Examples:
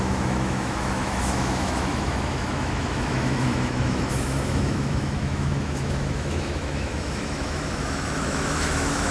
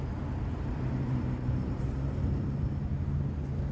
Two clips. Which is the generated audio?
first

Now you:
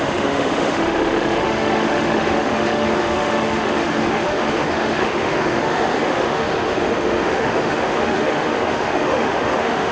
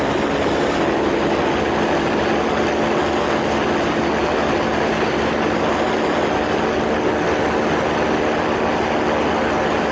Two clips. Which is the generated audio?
first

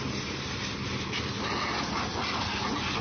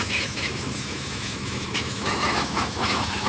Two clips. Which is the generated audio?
second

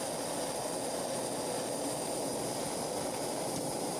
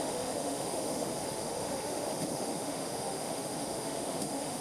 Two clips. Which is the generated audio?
second